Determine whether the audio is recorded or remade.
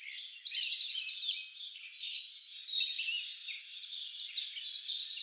recorded